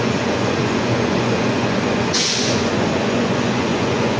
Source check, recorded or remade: remade